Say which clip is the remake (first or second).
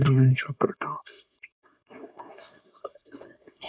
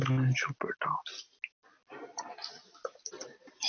first